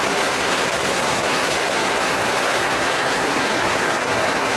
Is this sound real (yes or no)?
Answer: no